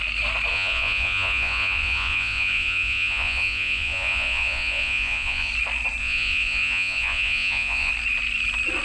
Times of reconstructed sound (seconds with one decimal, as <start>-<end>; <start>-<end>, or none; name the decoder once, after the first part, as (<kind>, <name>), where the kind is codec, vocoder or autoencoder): 0.5-5.5 (vocoder, Vocos); 6.0-7.9